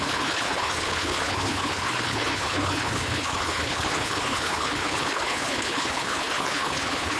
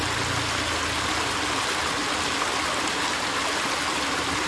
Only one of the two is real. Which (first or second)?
second